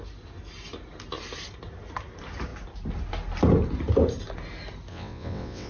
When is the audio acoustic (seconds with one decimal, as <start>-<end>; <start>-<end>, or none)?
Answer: 0.0-4.9